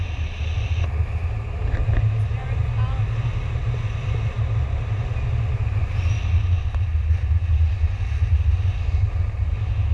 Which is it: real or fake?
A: real